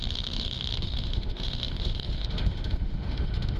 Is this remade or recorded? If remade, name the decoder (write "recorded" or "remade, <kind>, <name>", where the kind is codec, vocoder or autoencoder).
remade, autoencoder, DAC-VAE